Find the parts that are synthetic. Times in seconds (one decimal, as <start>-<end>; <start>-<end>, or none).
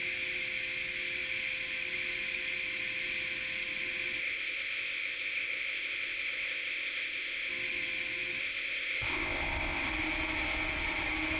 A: 4.2-7.5; 8.4-9.9